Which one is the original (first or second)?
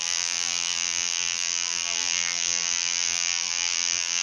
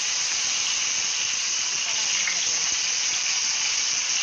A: second